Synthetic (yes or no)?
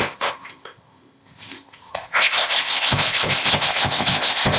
yes